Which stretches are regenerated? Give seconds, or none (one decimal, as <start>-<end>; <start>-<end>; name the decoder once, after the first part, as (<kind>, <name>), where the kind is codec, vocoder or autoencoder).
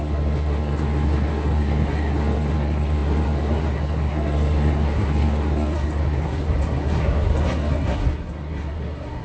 0.0-9.2 (codec, SNAC)